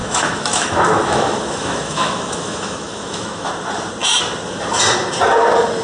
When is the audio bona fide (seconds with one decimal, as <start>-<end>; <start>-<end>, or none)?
3.5-5.8